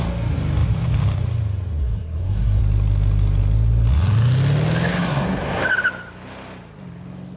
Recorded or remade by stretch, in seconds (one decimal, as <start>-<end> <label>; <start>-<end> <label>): 0.0-1.8 recorded; 1.8-2.6 remade; 2.6-4.9 recorded; 4.9-5.6 remade; 5.6-7.4 recorded